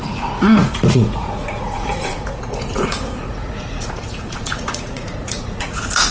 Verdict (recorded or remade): remade